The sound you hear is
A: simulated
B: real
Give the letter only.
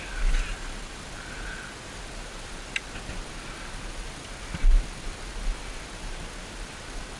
B